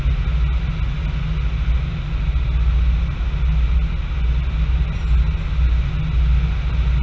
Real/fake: real